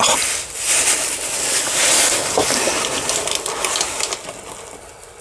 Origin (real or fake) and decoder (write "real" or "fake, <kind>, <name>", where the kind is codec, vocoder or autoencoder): real